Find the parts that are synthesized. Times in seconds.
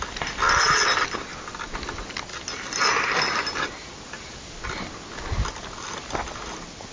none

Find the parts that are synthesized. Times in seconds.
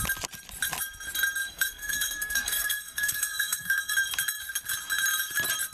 1.4-3.9 (codec, SNAC)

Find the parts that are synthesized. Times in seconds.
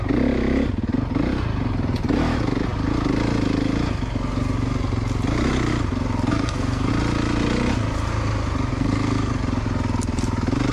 6.3-6.9 (codec, SNAC); 8.7-9.3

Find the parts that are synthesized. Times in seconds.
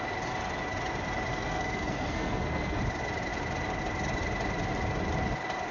1.3-2.8 (codec, SNAC)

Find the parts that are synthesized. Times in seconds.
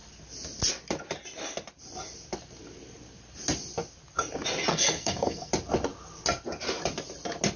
4.7-5.5 (codec, SNAC)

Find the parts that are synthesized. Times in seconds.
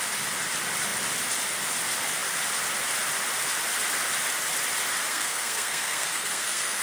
5.1-6.8 (codec, SNAC)